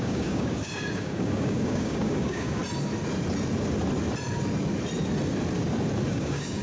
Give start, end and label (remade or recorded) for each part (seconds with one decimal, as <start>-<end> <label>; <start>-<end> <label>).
0.0-2.6 remade; 2.6-6.1 recorded; 6.1-6.6 remade